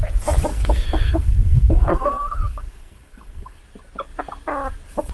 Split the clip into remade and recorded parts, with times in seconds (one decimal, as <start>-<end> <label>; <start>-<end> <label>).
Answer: 0.0-0.5 recorded; 0.5-3.6 remade; 3.6-5.1 recorded